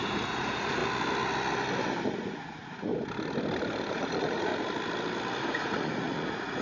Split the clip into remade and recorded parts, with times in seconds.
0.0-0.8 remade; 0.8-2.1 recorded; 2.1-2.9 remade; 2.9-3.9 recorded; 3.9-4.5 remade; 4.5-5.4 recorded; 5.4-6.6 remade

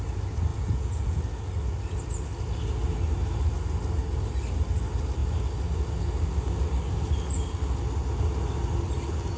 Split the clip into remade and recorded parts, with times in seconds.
0.0-0.5 recorded; 0.5-1.2 remade; 1.2-9.4 recorded

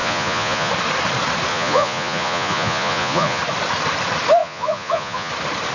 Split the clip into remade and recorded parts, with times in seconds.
0.0-0.7 remade; 0.7-1.5 recorded; 1.5-3.4 remade; 3.4-4.4 recorded; 4.4-5.3 remade; 5.3-5.7 recorded

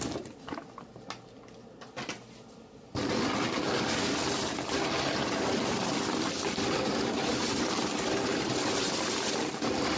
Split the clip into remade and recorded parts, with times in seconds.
0.0-10.0 recorded

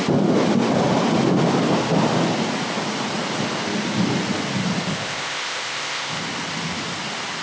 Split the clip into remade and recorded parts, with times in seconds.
0.0-4.9 recorded; 4.9-6.2 remade; 6.2-7.4 recorded

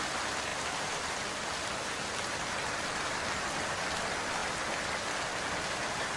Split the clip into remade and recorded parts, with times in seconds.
0.0-0.5 recorded; 0.5-1.2 remade; 1.2-6.2 recorded

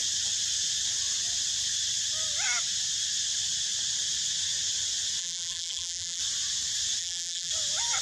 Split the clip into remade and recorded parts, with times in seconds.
0.0-5.2 recorded; 5.2-6.2 remade; 6.2-7.0 recorded; 7.0-7.5 remade; 7.5-8.0 recorded